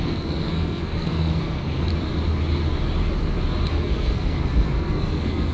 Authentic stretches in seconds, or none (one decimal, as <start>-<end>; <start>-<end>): 1.9-3.7